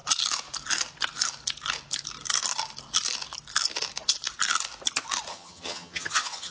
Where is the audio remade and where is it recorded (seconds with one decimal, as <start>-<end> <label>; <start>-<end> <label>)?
0.0-5.3 recorded; 5.3-6.5 remade